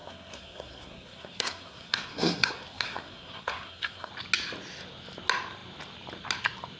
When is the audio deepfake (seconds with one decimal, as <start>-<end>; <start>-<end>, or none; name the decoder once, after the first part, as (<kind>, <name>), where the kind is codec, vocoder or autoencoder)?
0.0-4.1 (codec, SNAC)